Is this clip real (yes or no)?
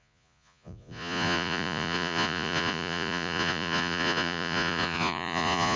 no